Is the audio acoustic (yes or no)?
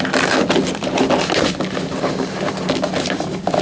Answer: yes